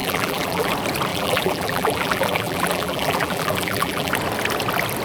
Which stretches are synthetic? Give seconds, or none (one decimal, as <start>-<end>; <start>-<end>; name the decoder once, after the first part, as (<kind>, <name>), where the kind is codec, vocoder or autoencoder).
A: 0.0-0.7 (vocoder, BigVGAN v2); 1.1-4.1